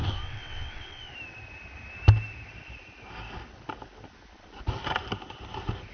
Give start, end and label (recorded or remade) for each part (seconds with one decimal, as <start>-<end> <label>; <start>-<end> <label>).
0.0-1.1 remade; 1.1-5.9 recorded